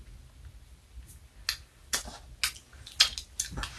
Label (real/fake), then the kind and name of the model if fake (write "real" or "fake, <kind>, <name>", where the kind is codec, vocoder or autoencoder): real